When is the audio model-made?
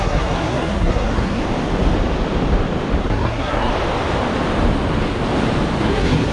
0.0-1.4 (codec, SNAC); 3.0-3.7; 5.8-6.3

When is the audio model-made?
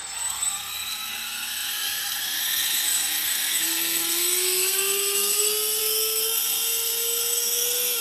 0.0-8.0 (codec, SNAC)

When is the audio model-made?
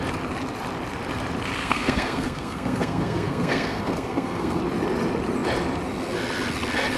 1.6-4.6 (codec, SNAC)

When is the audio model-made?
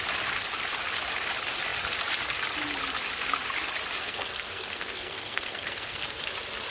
4.0-6.2 (codec, SNAC)